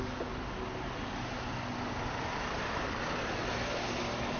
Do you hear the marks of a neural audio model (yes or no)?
no